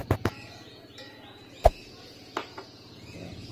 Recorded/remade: remade